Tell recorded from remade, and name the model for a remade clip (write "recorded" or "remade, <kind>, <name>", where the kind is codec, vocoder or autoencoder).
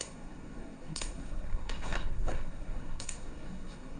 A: remade, codec, SNAC